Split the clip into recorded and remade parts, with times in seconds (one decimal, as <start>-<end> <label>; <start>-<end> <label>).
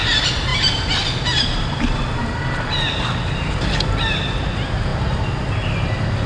0.0-6.3 recorded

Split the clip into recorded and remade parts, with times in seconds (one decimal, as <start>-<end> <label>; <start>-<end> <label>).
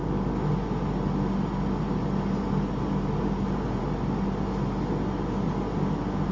0.0-6.3 recorded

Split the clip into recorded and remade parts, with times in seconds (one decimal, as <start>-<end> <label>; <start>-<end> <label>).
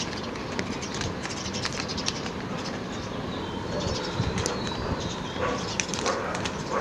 0.0-1.9 recorded; 1.9-5.7 remade; 5.7-6.8 recorded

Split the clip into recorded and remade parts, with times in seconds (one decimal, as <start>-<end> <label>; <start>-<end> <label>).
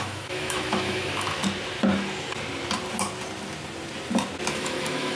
0.0-1.4 remade; 1.4-4.5 recorded; 4.5-5.2 remade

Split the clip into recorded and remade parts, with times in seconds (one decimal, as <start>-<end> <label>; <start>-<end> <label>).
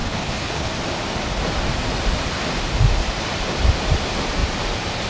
0.0-0.7 remade; 0.7-5.1 recorded